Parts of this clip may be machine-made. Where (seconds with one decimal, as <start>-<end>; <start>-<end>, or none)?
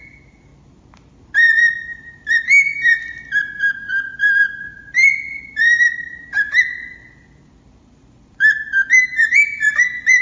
0.0-0.5; 1.6-2.7; 3.4-10.2